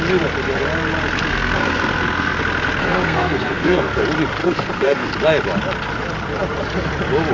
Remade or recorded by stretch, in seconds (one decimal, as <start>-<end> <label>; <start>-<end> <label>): 0.0-1.3 recorded; 1.3-2.4 remade; 2.4-2.8 recorded; 2.8-4.0 remade; 4.0-4.4 recorded; 4.4-5.1 remade; 5.1-7.3 recorded